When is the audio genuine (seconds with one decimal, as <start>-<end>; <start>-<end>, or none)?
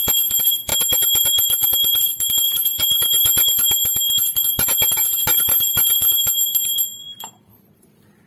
0.7-2.0